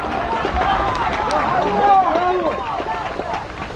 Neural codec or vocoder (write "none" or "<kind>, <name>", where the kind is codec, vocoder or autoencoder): none